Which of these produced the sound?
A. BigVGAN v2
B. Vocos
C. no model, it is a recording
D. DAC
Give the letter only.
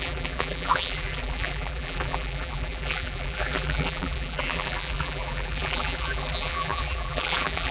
A